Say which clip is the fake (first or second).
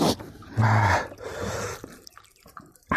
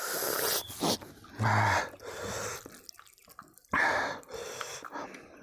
first